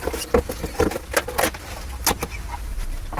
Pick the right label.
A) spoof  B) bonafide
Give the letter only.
B